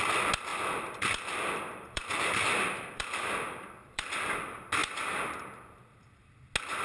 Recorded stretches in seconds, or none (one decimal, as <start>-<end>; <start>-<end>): 0.0-0.5; 4.3-4.8; 6.3-6.8